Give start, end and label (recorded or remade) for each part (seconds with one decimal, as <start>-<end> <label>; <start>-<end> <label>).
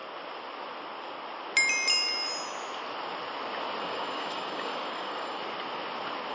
0.0-3.8 recorded; 3.8-5.4 remade; 5.4-6.3 recorded